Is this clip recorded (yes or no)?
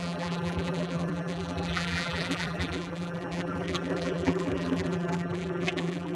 no